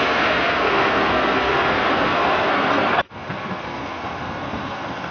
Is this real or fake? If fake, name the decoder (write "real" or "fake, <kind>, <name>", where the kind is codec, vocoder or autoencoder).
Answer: fake, codec, SNAC